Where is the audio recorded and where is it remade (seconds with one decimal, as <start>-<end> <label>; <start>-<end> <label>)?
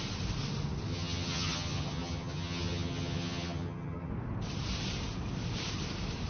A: 0.0-0.9 recorded; 0.9-4.1 remade; 4.1-6.3 recorded